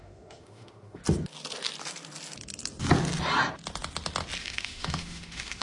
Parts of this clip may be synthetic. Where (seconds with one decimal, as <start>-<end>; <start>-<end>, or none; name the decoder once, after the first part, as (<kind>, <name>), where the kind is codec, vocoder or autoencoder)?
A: 0.0-1.0 (autoencoder, DAC-VAE); 4.4-5.6